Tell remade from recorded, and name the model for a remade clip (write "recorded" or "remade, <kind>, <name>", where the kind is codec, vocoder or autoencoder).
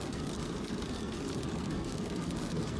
remade, codec, SNAC